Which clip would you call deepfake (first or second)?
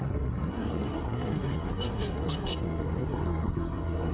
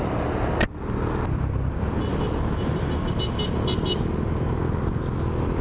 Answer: first